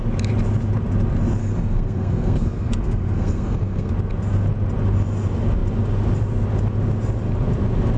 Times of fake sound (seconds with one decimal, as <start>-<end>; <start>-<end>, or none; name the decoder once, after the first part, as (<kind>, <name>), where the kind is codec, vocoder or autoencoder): 1.4-3.9 (codec, SNAC)